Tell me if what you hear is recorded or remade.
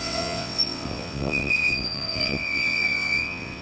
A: remade